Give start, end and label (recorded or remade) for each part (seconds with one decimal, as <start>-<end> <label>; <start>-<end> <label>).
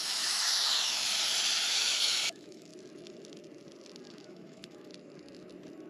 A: 0.0-1.0 remade; 1.0-1.7 recorded; 1.7-2.7 remade; 2.7-4.1 recorded; 4.1-4.9 remade; 4.9-5.9 recorded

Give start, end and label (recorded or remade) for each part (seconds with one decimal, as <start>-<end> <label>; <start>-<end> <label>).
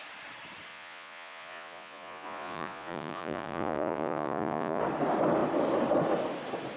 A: 0.0-0.7 recorded; 0.7-4.8 remade; 4.8-6.8 recorded